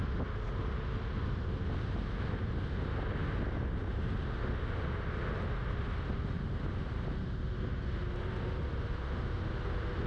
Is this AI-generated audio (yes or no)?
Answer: no